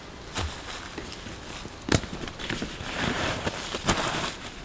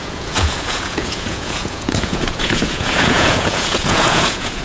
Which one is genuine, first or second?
first